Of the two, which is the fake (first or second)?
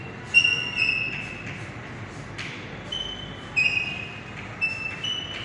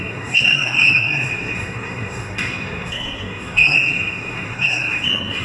second